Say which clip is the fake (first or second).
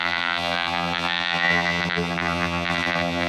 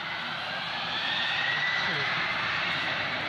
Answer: first